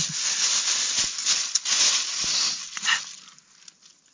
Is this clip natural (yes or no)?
yes